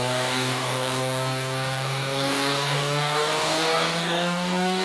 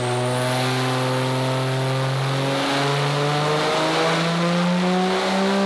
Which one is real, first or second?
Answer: second